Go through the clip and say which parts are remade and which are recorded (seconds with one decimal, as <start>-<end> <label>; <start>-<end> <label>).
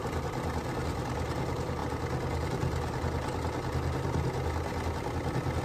0.0-5.6 recorded